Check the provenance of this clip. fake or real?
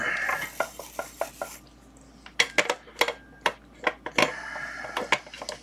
real